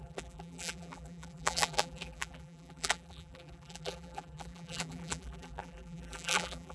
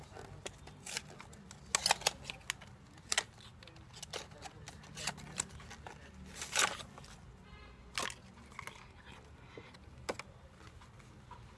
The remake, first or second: first